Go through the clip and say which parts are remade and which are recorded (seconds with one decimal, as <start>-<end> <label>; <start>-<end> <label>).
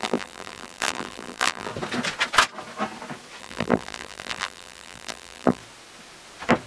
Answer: 0.0-1.7 remade; 1.7-3.4 recorded; 3.4-5.6 remade; 5.6-6.7 recorded